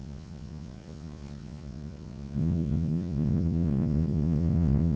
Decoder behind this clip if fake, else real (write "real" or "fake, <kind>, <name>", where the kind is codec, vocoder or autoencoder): fake, vocoder, Vocos